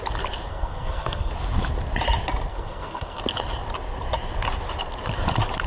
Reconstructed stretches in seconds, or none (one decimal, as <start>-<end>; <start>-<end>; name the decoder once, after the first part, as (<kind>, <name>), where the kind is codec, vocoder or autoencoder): 0.5-1.3 (codec, SNAC); 2.5-3.2

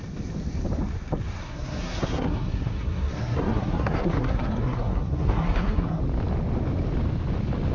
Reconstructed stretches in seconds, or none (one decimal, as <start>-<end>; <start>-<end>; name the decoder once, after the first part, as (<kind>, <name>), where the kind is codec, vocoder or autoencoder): 1.4-6.0 (codec, SNAC)

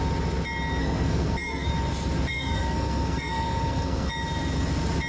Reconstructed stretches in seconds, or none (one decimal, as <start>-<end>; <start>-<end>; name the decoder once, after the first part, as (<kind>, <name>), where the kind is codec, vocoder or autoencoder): 0.8-1.7 (codec, SNAC); 2.3-4.1